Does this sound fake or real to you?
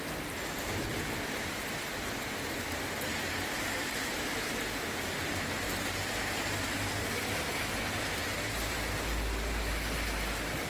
real